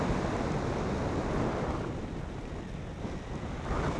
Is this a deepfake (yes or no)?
no